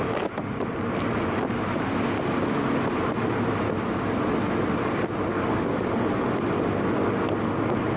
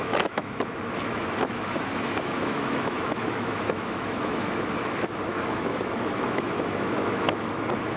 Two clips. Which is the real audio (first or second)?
first